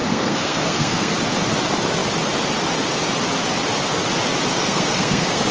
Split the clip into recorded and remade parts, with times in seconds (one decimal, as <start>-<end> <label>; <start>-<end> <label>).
0.0-1.1 remade; 1.1-4.5 recorded; 4.5-5.5 remade